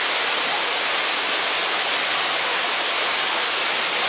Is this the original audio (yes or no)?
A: yes